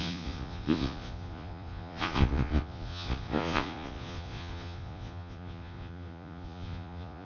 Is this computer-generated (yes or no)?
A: yes